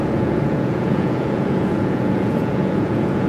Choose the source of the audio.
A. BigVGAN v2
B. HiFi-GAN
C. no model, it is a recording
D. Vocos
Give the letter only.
D